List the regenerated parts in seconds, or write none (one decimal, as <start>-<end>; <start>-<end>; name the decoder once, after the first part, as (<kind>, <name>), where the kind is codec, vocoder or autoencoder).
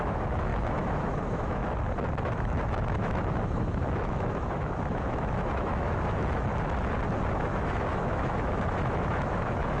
0.0-1.6 (autoencoder, DAC-VAE); 2.2-6.5; 7.3-9.8